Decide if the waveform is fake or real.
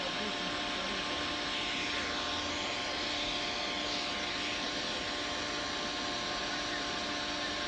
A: real